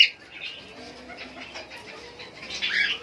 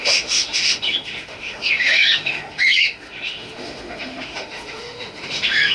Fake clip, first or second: second